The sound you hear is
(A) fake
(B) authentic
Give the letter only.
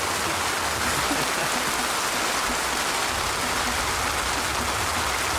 B